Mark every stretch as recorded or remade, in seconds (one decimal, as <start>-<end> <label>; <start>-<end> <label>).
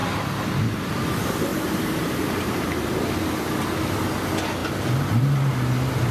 0.0-1.5 recorded; 1.5-3.0 remade; 3.0-4.6 recorded; 4.6-5.5 remade; 5.5-6.1 recorded